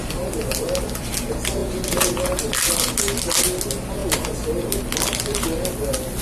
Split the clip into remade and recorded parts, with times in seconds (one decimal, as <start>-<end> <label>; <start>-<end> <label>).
0.0-1.1 remade; 1.1-4.0 recorded; 4.0-4.8 remade; 4.8-6.2 recorded